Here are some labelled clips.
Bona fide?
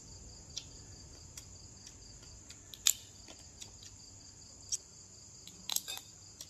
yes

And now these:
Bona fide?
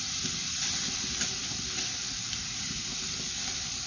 yes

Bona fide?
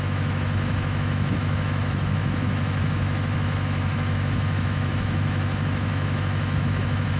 no